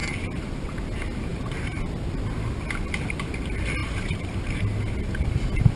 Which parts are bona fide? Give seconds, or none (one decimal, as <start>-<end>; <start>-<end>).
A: 0.8-1.3; 1.9-3.8; 4.6-5.8